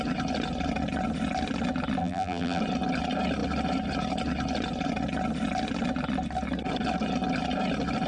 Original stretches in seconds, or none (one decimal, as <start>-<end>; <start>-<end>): 0.0-2.0; 2.6-8.1